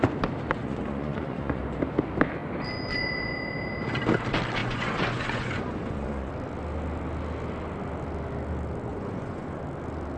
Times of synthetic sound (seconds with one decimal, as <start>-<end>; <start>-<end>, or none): 0.6-1.6; 4.6-6.3; 8.9-9.6